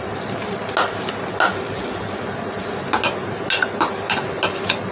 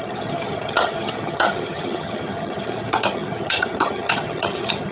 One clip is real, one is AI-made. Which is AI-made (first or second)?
second